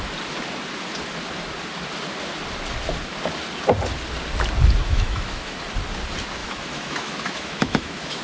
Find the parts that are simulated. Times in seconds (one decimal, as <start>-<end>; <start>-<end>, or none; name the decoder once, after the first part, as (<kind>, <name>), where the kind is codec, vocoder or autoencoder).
4.8-5.6 (autoencoder, DAC-VAE); 6.4-8.2